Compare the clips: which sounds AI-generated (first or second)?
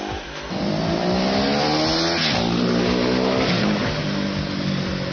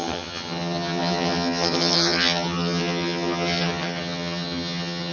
second